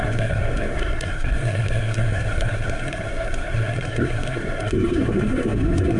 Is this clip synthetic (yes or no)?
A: yes